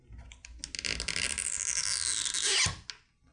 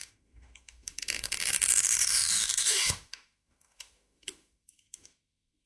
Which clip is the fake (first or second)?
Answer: second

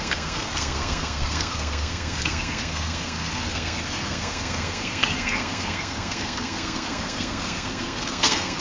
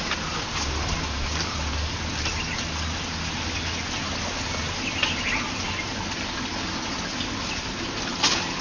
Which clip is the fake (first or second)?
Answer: first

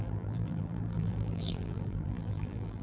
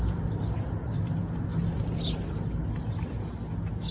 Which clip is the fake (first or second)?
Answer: first